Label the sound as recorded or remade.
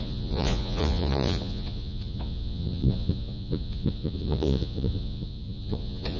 remade